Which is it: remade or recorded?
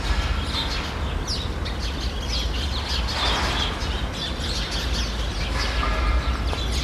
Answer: recorded